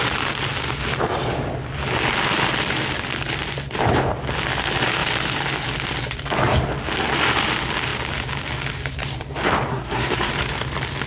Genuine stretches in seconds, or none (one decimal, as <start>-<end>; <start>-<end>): 0.0-9.7; 10.3-11.1